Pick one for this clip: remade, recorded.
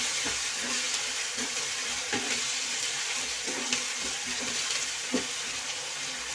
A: recorded